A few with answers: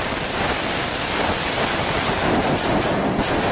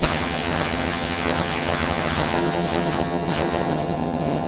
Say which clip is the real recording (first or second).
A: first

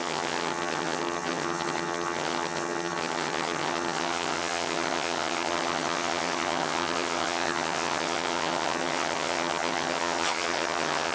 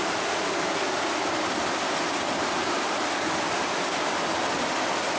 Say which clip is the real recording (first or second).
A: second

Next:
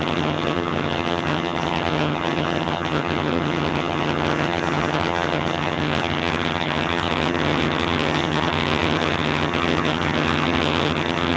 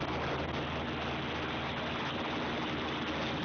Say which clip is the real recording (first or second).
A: second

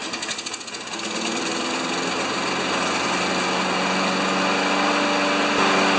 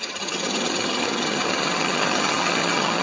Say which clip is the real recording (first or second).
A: first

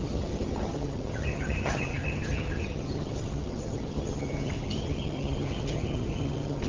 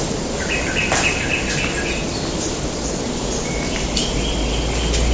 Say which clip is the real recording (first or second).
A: second